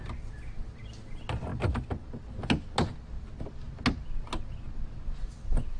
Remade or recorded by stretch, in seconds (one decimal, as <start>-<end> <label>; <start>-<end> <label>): 0.0-5.8 recorded